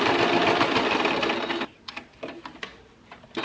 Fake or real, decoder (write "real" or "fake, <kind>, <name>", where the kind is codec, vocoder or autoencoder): real